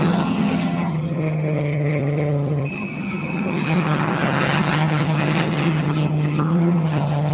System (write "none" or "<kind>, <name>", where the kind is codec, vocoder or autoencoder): vocoder, HiFi-GAN